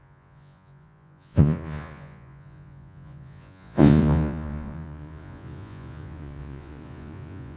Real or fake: fake